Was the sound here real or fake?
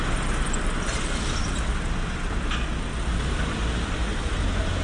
real